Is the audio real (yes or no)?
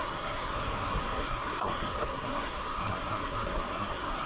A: no